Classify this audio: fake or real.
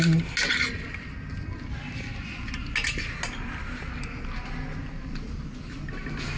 real